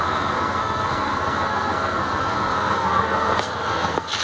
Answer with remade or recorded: remade